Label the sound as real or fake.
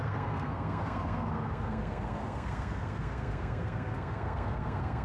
fake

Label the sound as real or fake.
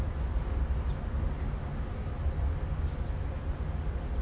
real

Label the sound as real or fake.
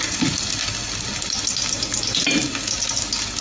real